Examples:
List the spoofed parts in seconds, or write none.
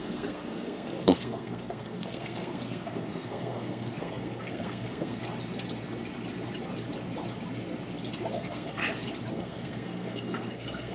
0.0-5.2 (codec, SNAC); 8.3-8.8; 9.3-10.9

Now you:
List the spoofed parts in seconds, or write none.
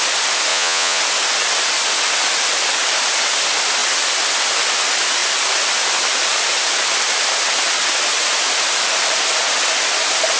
0.5-1.0 (vocoder, Vocos)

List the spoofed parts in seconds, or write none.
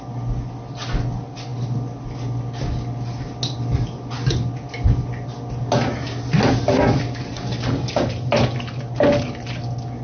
none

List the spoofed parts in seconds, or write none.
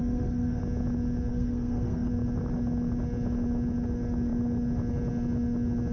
0.0-0.6 (codec, SNAC); 1.3-2.1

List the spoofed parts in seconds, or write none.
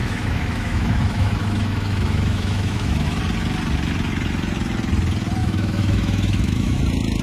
0.0-3.2 (autoencoder, DAC-VAE); 5.4-6.8